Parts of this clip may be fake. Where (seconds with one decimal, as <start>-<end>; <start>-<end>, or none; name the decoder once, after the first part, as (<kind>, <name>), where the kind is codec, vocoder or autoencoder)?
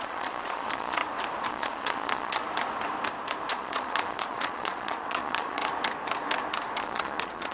0.0-1.0 (vocoder, Vocos); 1.5-2.4; 3.5-5.6; 6.8-7.5